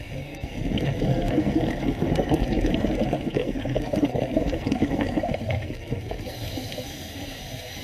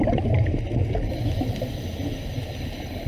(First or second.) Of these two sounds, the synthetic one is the first